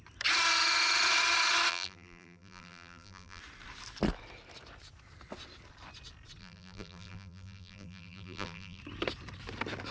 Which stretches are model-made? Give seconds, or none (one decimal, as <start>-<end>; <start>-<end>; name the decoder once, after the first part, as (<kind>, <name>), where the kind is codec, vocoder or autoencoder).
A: 1.7-3.4 (vocoder, BigVGAN v2); 6.4-8.8